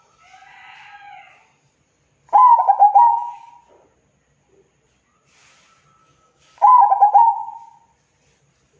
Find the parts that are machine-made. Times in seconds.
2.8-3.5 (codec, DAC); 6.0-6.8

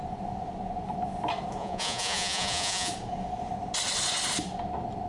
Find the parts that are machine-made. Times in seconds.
1.6-2.9 (vocoder, Vocos)

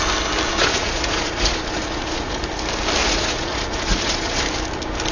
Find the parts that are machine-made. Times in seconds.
0.5-2.4 (vocoder, Vocos); 3.0-4.4

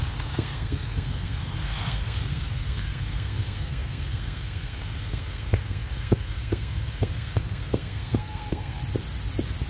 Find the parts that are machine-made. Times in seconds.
0.0-8.8 (codec, SNAC)

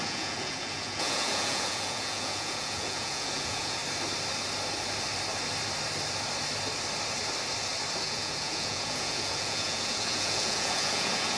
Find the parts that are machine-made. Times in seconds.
0.0-3.8 (vocoder, Vocos); 8.0-11.4

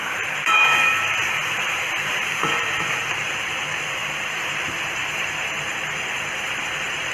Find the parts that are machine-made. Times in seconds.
0.0-5.0 (vocoder, BigVGAN v2); 6.6-7.1